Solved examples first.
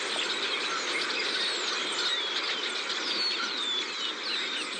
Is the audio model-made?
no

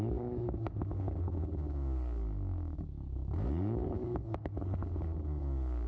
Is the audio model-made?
yes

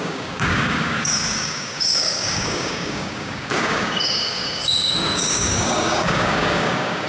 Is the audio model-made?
yes